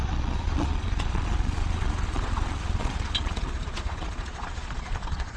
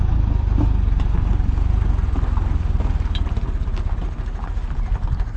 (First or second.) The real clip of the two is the second